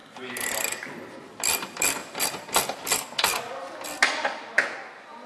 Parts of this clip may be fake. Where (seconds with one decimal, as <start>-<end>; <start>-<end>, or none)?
2.0-2.8

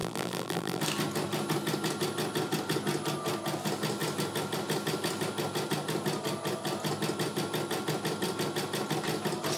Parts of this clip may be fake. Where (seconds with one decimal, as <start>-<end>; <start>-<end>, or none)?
0.0-0.8

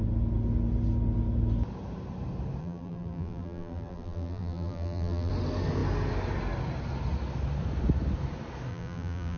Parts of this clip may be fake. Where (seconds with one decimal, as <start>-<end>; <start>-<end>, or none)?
2.6-5.3; 8.7-9.4

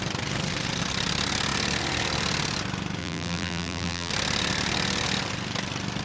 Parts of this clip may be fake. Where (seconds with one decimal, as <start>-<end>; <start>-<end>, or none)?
3.0-4.1

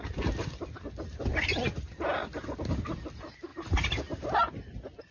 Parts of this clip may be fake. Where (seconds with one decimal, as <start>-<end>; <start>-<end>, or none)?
none

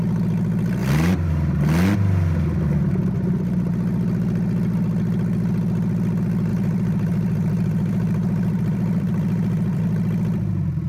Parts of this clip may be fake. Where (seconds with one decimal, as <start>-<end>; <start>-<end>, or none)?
0.8-1.3; 6.5-9.8

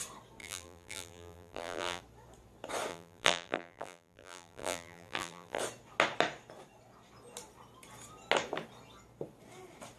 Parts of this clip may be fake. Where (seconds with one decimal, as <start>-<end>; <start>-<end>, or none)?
0.4-2.0; 2.9-5.6